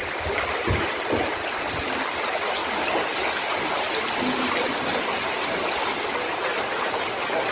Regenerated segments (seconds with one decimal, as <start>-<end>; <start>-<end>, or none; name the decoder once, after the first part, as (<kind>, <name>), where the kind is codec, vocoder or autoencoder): none